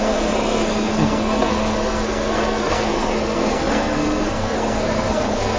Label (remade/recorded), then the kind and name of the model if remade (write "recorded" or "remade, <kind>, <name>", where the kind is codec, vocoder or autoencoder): remade, codec, SNAC